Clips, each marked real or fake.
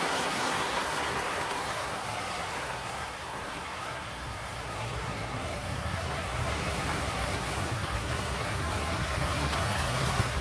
fake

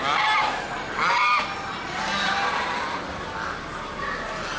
real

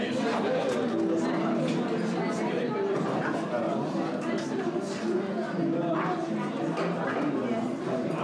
real